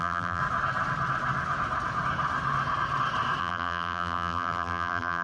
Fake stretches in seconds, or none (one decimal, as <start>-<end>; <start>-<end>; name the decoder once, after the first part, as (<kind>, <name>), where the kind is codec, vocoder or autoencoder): 0.0-0.4 (vocoder, BigVGAN v2); 3.4-5.2